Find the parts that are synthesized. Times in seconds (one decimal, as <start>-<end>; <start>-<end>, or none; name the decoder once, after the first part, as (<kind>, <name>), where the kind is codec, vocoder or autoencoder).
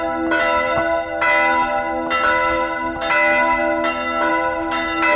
none